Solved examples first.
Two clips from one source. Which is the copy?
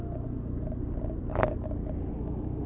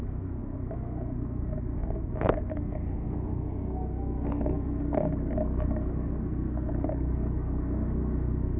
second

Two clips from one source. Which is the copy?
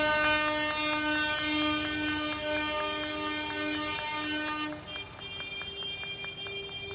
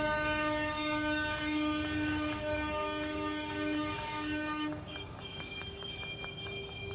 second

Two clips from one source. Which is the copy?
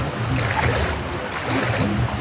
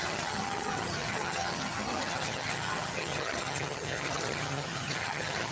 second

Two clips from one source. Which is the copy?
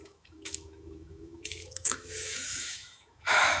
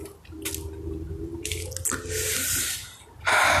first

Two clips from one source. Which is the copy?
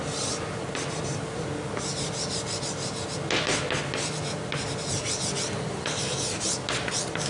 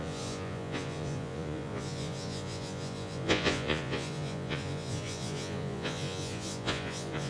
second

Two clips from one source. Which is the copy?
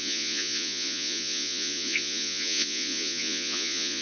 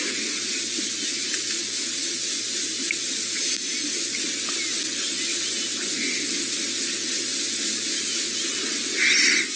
first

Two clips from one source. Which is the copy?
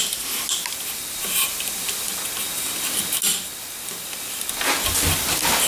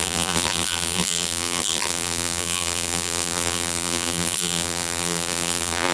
second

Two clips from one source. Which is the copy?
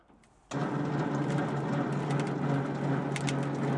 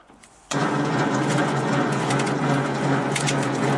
second